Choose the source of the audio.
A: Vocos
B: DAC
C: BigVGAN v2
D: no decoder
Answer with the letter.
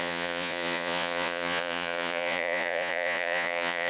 A